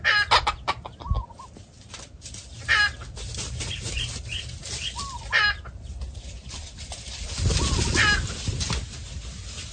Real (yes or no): yes